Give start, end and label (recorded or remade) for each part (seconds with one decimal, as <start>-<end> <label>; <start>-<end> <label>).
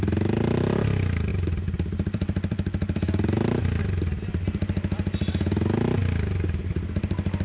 0.0-1.3 recorded; 1.3-3.8 remade; 3.8-7.4 recorded